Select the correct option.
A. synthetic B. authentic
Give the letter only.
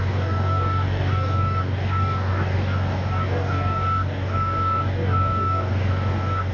A